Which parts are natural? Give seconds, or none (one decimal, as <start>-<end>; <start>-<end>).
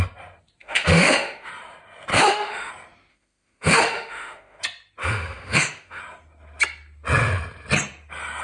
0.0-0.6; 1.5-2.1; 2.7-3.1; 4.6-5.0; 6.0-8.4